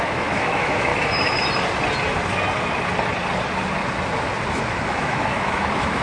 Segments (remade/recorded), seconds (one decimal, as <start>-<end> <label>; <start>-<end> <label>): 0.0-0.9 remade; 0.9-4.5 recorded; 4.5-6.0 remade